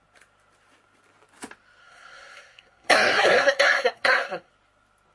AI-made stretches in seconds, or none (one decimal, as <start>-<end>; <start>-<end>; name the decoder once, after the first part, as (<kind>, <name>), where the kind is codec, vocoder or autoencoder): 1.8-4.5 (codec, SNAC)